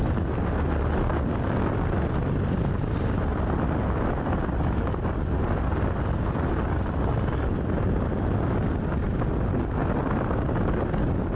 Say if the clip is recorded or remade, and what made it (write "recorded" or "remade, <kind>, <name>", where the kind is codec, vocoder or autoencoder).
recorded